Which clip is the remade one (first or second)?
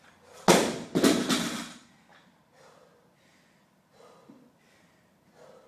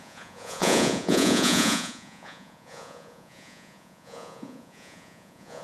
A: second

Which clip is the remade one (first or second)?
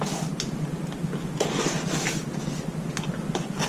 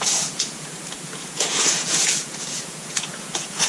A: second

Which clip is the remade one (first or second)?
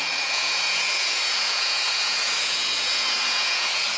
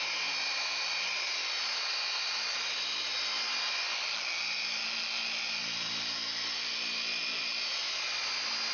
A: first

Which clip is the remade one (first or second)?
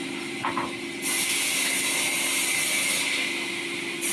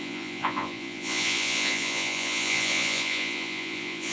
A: second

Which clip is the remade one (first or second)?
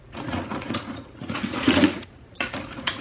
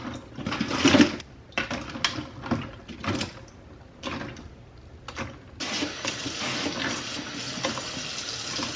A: first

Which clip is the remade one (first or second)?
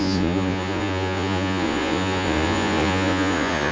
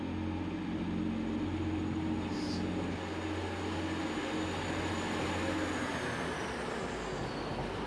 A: first